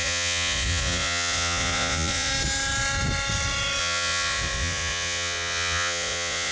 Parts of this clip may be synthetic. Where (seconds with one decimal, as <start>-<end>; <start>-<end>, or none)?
0.0-2.3; 3.8-6.5